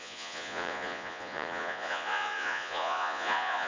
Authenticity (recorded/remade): remade